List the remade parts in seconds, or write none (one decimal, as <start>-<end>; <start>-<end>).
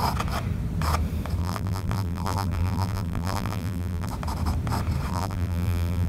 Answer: 1.4-4.1; 5.1-6.1